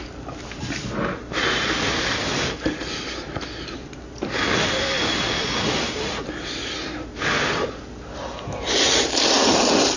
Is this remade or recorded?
recorded